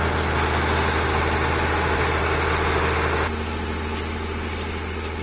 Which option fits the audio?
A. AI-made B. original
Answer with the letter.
B